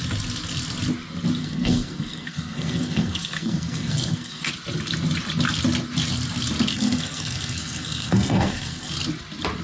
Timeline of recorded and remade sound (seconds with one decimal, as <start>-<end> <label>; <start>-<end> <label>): 0.0-1.4 recorded; 1.4-4.5 remade; 4.5-6.7 recorded; 6.7-8.9 remade; 8.9-9.6 recorded